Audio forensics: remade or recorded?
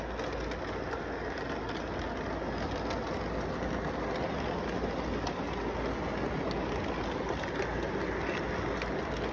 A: recorded